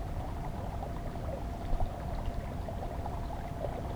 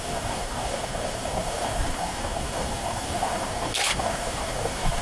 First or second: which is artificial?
second